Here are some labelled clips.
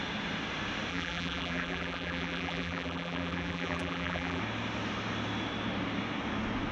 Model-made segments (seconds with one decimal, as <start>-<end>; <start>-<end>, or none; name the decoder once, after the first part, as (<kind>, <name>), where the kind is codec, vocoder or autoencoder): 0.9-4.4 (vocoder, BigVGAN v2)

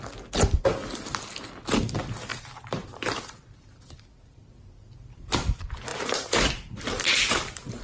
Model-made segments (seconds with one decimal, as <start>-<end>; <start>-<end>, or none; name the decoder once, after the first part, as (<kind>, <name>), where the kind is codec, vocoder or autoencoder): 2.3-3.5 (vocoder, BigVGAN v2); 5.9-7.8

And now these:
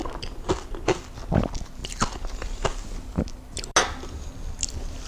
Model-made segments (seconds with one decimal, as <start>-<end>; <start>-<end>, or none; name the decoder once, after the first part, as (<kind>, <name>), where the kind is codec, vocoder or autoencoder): 1.2-1.8 (vocoder, BigVGAN v2); 4.6-5.1

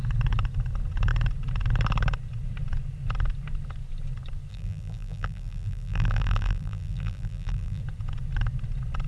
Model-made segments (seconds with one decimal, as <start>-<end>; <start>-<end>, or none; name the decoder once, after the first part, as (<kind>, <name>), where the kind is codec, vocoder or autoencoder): 4.5-7.8 (vocoder, BigVGAN v2)